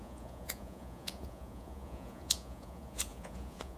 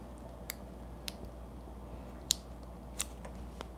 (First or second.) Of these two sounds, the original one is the second